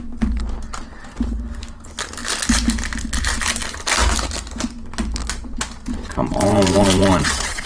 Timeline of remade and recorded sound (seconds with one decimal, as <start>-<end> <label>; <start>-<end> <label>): 0.0-6.1 recorded; 6.1-7.7 remade